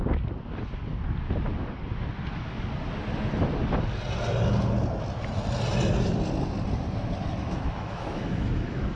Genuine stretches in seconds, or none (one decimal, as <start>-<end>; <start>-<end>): 0.0-7.4